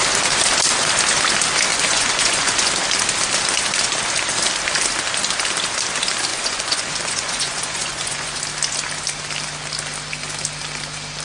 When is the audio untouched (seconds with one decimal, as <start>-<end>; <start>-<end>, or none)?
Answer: 0.0-1.7; 2.7-6.3; 8.4-11.2